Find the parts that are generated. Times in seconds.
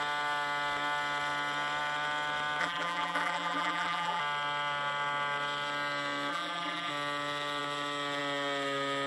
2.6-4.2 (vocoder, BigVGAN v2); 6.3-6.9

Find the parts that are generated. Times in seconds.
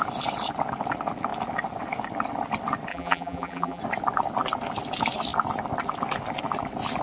2.9-3.8 (vocoder, BigVGAN v2)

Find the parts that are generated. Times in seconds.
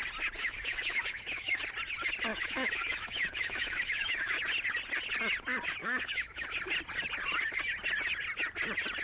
0.4-1.6 (autoencoder, DAC-VAE); 2.3-4.4; 5.8-6.5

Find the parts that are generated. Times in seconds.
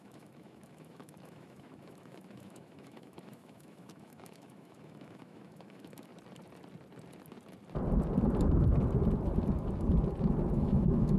0.0-6.1 (autoencoder, DAC-VAE); 10.5-11.2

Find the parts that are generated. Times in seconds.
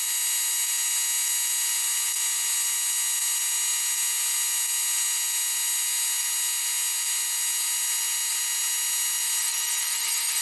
9.4-10.4 (autoencoder, DAC-VAE)